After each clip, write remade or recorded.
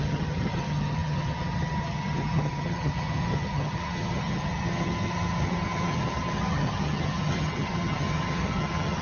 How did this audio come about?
remade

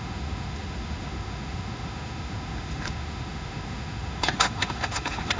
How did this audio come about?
remade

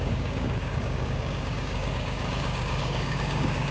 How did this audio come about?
remade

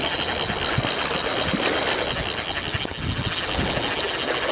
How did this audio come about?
recorded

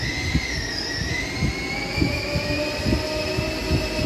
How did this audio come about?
recorded